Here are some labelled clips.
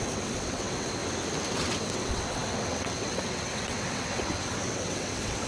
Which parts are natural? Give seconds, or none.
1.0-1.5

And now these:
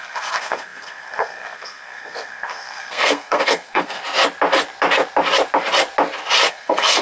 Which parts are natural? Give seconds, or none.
4.0-6.5

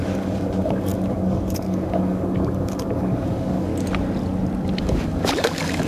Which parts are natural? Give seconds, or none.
3.7-4.8

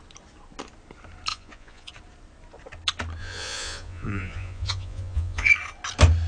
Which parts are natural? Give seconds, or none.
0.0-1.3; 1.9-3.2; 5.5-6.3